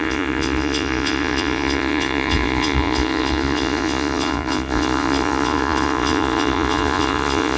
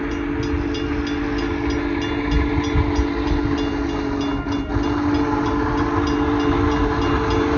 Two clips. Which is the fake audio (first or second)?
first